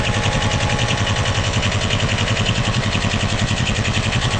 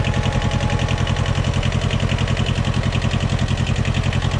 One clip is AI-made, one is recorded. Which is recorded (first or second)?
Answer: second